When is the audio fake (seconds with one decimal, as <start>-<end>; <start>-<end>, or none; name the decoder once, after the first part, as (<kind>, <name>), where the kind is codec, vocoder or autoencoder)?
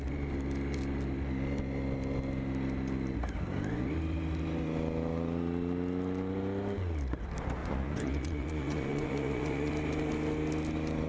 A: 7.6-9.7 (vocoder, Vocos)